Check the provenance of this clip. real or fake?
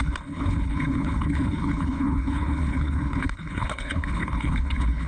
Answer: fake